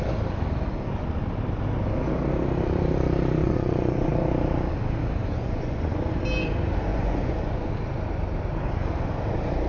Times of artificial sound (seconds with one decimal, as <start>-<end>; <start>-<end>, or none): 3.4-4.1; 5.2-6.2; 6.9-7.7